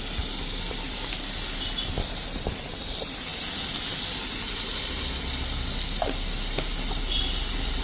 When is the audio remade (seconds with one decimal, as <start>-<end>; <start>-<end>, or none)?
none